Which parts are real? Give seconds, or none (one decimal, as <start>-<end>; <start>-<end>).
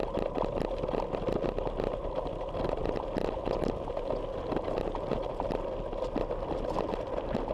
0.0-7.5